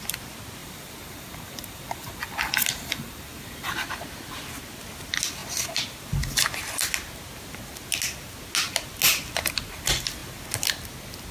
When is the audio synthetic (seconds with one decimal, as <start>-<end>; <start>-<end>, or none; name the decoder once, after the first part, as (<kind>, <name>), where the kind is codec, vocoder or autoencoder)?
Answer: 0.6-3.7 (vocoder, BigVGAN v2)